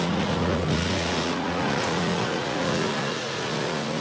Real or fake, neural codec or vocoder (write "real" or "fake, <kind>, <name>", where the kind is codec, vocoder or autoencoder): fake, vocoder, Vocos